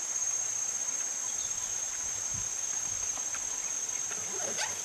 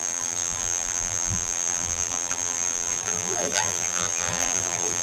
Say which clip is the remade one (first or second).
second